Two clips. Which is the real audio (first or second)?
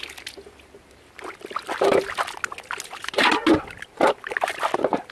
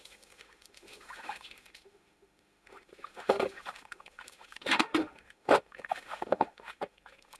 first